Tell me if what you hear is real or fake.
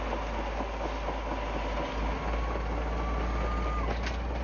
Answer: real